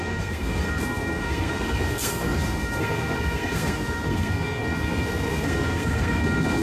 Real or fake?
fake